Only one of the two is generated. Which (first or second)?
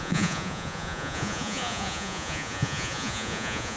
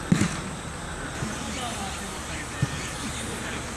first